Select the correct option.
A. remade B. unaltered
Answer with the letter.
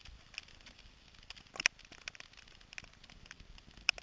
B